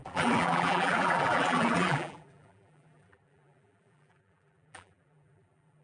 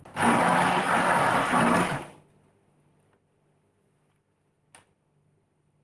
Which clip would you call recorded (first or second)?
second